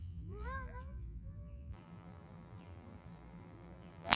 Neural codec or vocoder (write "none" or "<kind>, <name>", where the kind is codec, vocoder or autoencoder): vocoder, BigVGAN v2